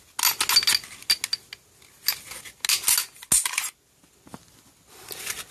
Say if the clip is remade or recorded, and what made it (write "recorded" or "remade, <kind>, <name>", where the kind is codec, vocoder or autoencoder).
recorded